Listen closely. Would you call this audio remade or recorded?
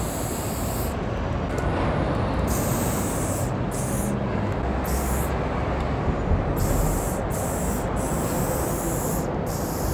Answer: recorded